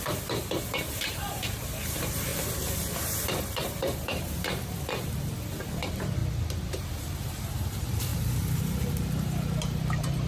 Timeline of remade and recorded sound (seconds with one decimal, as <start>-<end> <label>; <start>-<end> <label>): 0.0-6.2 remade; 6.2-6.7 recorded; 6.7-8.1 remade; 8.1-8.6 recorded; 8.6-10.3 remade